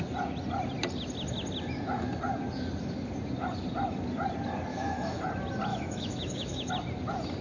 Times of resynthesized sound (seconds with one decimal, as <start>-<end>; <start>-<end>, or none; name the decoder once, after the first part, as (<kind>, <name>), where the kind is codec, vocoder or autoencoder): 4.7-5.2 (autoencoder, DAC-VAE); 5.7-6.7